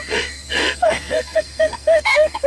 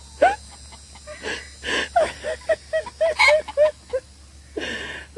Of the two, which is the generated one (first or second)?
first